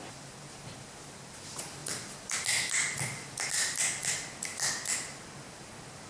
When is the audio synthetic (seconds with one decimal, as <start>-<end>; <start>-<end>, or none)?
none